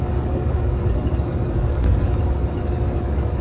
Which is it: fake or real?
fake